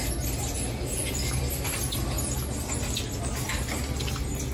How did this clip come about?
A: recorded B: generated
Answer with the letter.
A